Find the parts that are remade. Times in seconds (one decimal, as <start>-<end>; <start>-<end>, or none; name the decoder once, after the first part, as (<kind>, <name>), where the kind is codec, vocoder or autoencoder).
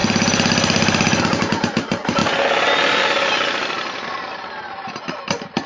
none